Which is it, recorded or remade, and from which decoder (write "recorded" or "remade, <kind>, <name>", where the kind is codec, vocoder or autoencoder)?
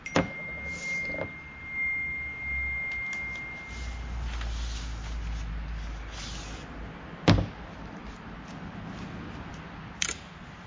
recorded